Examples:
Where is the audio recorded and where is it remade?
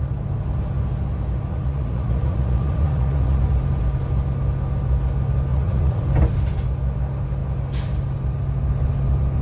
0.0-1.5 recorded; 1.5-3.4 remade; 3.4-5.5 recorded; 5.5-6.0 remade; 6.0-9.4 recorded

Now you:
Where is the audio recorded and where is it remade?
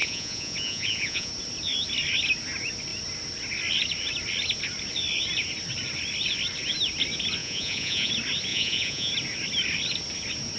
0.0-1.3 remade; 1.3-7.4 recorded; 7.4-8.1 remade; 8.1-8.5 recorded; 8.5-9.1 remade; 9.1-10.6 recorded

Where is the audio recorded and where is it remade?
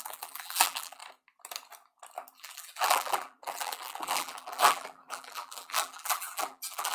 0.0-1.0 remade; 1.0-2.3 recorded; 2.3-6.9 remade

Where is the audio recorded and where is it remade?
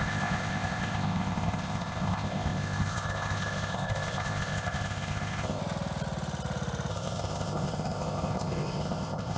0.0-5.6 remade; 5.6-6.9 recorded; 6.9-9.4 remade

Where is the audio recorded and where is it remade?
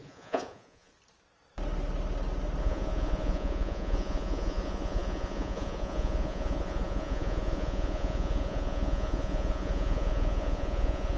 0.0-0.9 remade; 0.9-2.6 recorded; 2.6-11.2 remade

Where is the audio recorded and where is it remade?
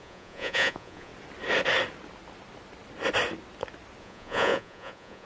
0.0-1.1 remade; 1.1-4.0 recorded; 4.0-5.3 remade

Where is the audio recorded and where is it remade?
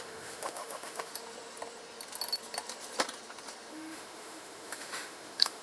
0.0-1.1 remade; 1.1-3.7 recorded; 3.7-5.6 remade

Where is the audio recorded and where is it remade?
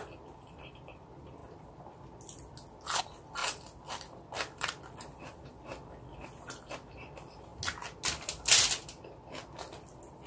0.0-10.3 recorded